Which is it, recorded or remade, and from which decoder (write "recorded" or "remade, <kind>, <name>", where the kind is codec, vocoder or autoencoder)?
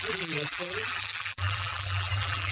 remade, vocoder, BigVGAN v2